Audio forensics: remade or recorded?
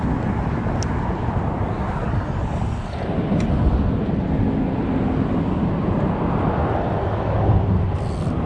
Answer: recorded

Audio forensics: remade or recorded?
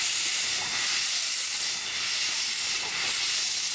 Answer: recorded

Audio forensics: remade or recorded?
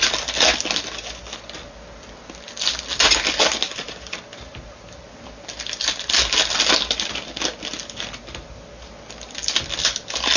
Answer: recorded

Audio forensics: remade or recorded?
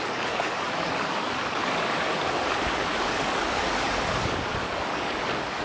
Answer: remade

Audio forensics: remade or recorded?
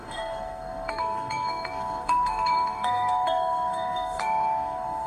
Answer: remade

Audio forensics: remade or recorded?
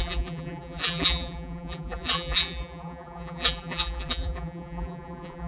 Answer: remade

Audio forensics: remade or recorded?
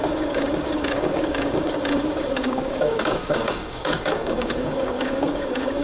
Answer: remade